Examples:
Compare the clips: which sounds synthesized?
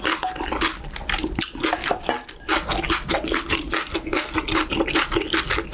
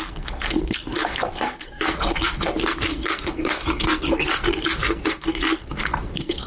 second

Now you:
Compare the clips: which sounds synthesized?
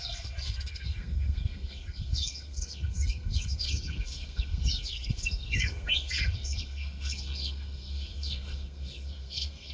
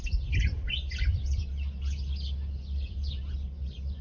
first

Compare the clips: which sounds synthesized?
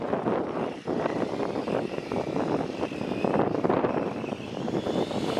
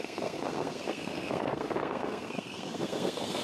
second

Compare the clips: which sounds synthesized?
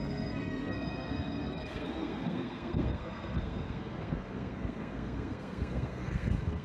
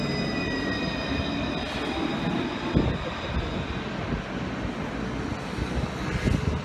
first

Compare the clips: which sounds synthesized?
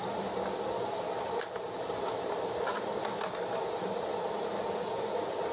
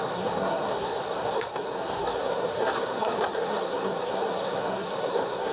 second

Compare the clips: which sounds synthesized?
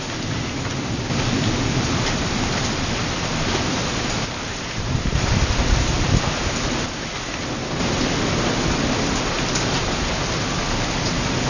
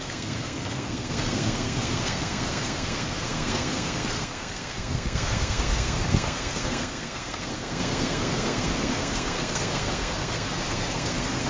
second